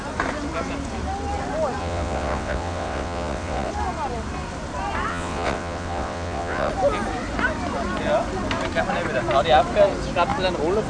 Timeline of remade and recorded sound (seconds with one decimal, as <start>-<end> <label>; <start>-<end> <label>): 0.0-1.8 recorded; 1.8-3.7 remade; 3.7-5.1 recorded; 5.1-6.7 remade; 6.7-10.9 recorded